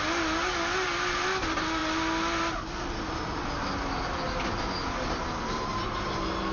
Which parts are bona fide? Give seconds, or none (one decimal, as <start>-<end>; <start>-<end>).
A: 0.0-6.5